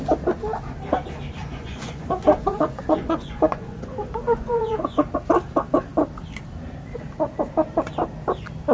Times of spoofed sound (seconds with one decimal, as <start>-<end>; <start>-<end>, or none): 1.4-5.0